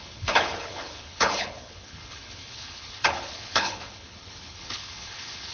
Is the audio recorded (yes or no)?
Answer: no